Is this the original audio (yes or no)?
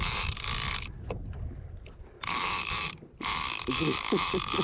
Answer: yes